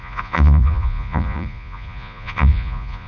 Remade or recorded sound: remade